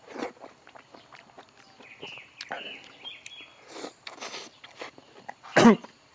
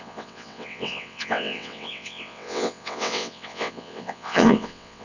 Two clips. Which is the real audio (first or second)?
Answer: first